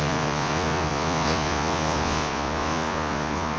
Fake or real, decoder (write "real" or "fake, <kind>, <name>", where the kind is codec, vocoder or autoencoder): fake, vocoder, Vocos